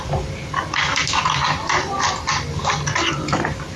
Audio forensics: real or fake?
real